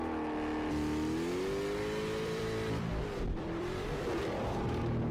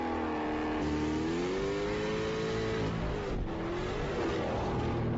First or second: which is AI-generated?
first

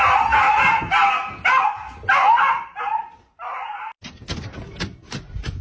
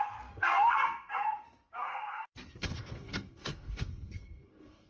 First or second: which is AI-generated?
second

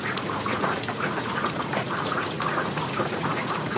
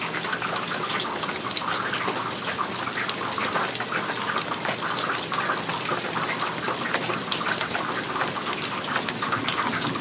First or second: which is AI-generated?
first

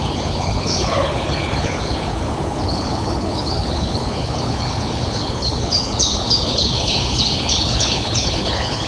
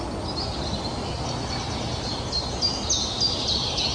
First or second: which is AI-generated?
first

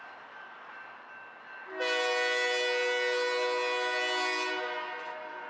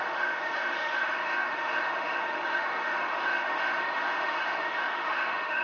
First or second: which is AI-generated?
second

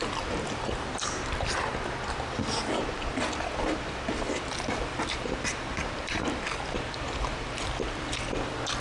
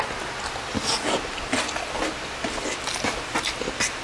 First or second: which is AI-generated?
first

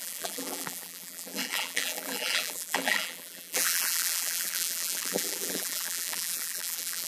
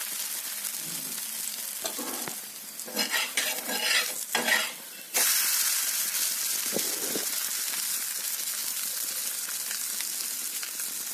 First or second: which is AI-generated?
first